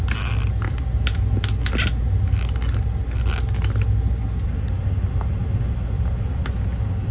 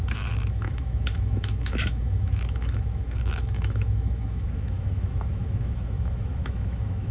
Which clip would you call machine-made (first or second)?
second